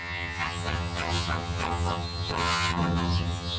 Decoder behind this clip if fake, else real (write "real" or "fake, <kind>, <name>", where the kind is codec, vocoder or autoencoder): fake, vocoder, HiFi-GAN